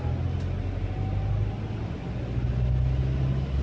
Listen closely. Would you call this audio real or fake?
real